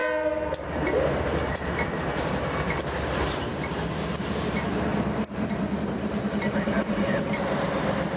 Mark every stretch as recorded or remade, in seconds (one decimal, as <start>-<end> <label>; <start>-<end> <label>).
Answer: 0.0-2.5 recorded; 2.5-8.2 remade